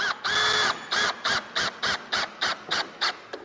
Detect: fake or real real